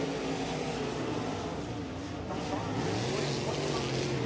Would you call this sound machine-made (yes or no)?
no